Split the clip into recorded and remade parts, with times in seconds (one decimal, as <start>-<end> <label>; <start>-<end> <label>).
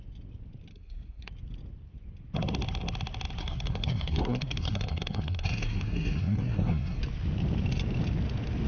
0.0-0.7 recorded; 0.7-1.3 remade; 1.3-3.4 recorded; 3.4-7.0 remade; 7.0-8.7 recorded